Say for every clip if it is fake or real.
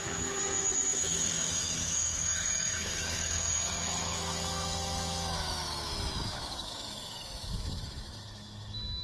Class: fake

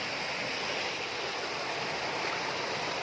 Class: real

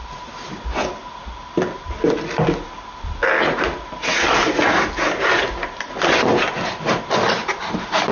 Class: real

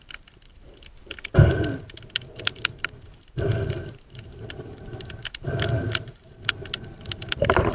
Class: real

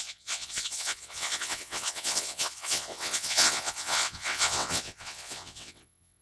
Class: fake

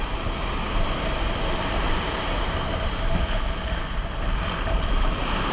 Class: real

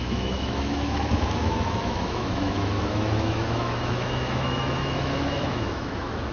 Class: fake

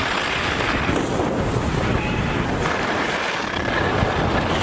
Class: real